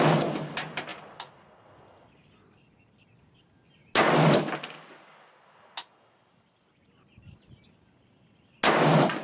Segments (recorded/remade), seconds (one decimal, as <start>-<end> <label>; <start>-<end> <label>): 0.0-9.2 recorded